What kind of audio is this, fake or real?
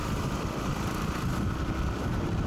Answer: real